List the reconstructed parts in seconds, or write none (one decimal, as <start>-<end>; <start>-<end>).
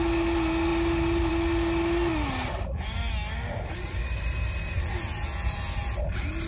none